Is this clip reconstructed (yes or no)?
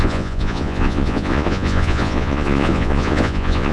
yes